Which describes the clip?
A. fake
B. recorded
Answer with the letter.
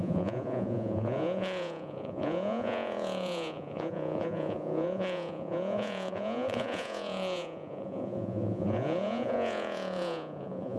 A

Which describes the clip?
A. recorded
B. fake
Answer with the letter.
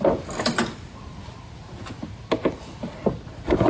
A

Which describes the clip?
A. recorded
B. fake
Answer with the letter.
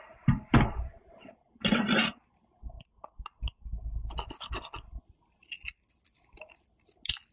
A